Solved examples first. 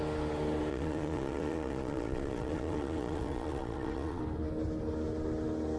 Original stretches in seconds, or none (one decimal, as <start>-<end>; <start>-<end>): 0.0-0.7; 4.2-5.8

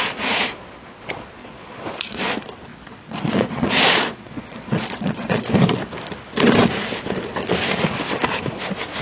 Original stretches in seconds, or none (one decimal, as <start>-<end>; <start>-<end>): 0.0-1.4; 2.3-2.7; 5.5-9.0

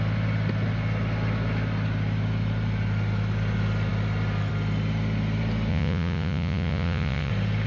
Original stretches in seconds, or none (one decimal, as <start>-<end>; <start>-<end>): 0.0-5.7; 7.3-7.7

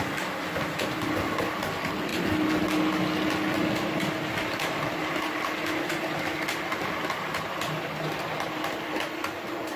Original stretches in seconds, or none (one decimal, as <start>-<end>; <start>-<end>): 0.0-9.8

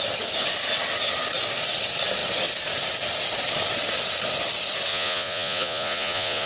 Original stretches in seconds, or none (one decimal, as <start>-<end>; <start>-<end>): 0.0-4.9

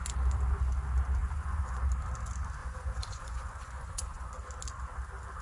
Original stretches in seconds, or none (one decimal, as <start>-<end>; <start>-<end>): 0.0-1.2; 1.8-2.6; 4.3-5.4

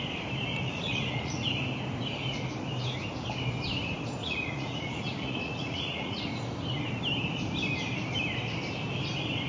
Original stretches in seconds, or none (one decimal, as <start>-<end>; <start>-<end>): 0.0-0.5; 1.5-4.2; 6.3-9.5

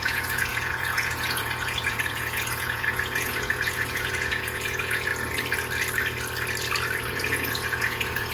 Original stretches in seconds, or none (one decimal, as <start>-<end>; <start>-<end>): 5.1-7.0